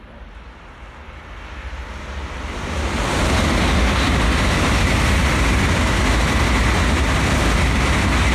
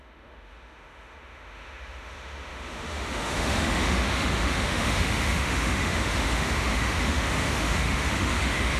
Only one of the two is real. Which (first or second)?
first